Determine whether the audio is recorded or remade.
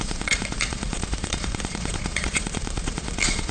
remade